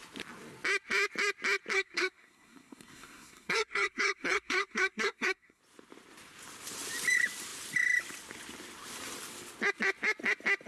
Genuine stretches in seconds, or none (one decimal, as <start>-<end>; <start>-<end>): 0.0-1.7; 5.6-10.7